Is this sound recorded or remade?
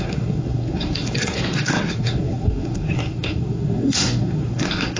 remade